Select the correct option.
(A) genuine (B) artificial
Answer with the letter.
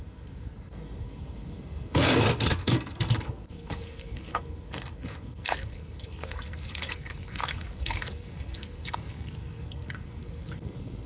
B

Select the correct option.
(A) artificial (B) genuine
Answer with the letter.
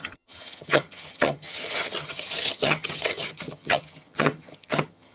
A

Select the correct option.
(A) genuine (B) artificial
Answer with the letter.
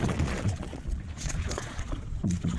B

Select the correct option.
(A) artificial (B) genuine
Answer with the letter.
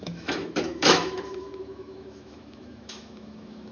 A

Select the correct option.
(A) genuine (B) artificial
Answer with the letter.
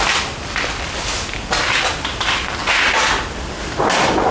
A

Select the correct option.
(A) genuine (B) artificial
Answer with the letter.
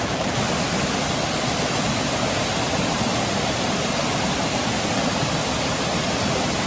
A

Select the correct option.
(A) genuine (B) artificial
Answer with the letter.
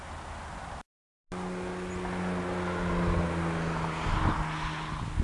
A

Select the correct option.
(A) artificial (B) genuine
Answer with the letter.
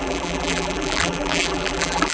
A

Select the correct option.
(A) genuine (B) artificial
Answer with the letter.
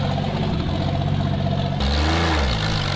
A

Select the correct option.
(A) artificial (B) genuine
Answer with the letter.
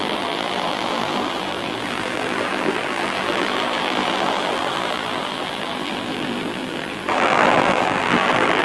A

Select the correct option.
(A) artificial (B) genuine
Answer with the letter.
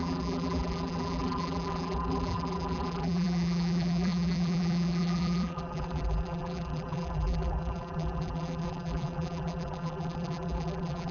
A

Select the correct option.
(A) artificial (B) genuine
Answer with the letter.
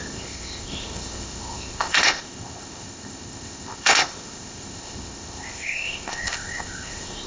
A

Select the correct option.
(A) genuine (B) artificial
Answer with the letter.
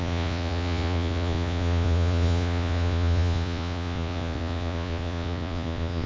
B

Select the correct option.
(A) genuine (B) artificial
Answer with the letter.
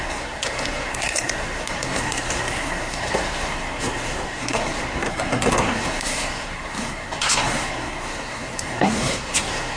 B